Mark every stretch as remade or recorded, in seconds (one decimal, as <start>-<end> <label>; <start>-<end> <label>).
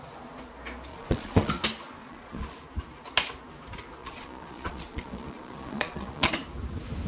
0.0-0.9 recorded; 0.9-1.5 remade; 1.5-2.0 recorded; 2.0-2.6 remade; 2.6-4.0 recorded; 4.0-6.3 remade; 6.3-7.1 recorded